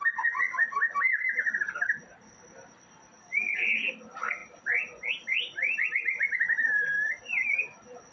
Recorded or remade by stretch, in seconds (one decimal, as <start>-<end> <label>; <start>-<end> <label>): 0.0-4.4 recorded; 4.4-6.9 remade; 6.9-8.1 recorded